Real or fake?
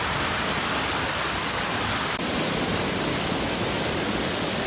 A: real